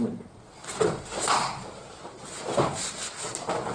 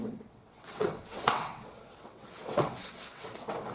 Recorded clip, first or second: first